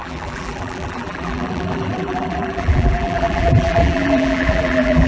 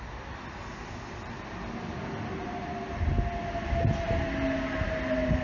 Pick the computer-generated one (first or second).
first